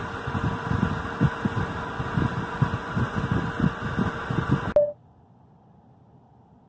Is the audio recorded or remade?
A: recorded